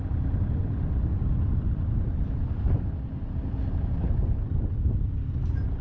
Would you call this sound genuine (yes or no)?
yes